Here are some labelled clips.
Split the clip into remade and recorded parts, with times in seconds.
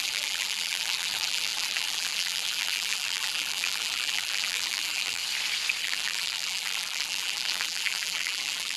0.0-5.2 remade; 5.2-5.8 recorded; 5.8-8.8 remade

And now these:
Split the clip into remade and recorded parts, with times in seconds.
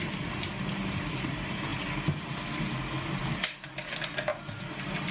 0.0-5.1 recorded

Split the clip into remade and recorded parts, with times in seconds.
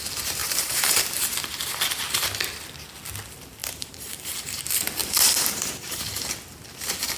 0.0-0.4 recorded; 0.4-1.3 remade; 1.3-3.6 recorded; 3.6-4.6 remade; 4.6-5.0 recorded; 5.0-6.0 remade; 6.0-7.2 recorded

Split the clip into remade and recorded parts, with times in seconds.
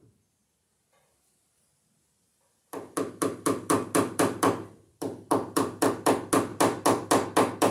0.0-7.7 recorded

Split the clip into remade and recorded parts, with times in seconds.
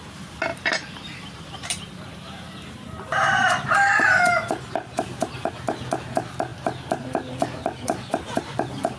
0.0-0.5 recorded; 0.5-5.5 remade; 5.5-9.0 recorded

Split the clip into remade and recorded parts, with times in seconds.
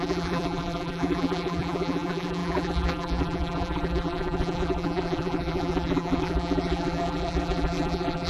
0.0-8.3 remade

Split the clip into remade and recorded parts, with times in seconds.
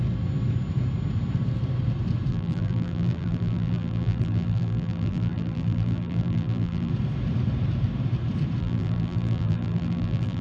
0.0-2.3 recorded; 2.3-6.9 remade; 6.9-8.6 recorded; 8.6-10.4 remade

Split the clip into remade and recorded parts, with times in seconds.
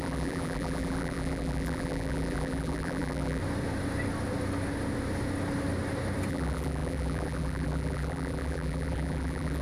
0.0-3.4 remade; 3.4-6.3 recorded; 6.3-9.6 remade